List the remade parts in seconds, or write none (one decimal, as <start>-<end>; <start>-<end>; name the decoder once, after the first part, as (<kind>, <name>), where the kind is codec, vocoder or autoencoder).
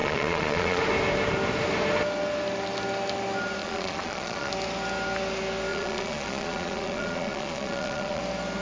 0.0-0.8 (vocoder, Vocos); 3.6-4.5; 5.7-8.2